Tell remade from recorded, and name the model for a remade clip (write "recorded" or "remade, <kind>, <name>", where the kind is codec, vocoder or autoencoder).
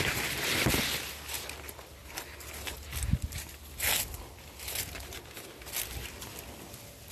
recorded